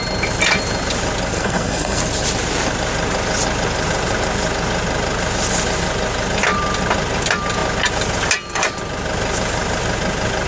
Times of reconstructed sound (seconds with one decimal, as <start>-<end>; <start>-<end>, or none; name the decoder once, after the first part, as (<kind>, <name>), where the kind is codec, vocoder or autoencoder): 1.3-2.0 (codec, SNAC)

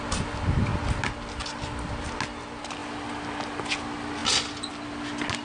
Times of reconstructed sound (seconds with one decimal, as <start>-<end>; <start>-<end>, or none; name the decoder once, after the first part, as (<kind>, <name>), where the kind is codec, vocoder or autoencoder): none